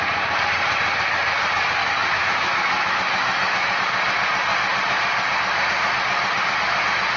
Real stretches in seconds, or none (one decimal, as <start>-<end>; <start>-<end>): 0.0-1.8; 3.8-7.2